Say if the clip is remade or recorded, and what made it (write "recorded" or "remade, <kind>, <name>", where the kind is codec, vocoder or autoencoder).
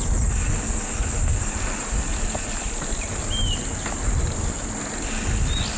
recorded